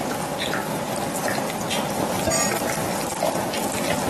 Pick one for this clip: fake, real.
real